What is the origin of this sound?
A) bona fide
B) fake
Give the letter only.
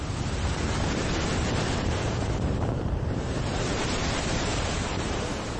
B